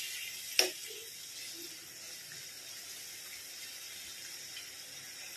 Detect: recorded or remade recorded